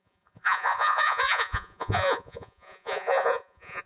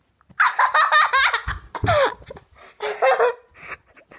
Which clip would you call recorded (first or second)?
second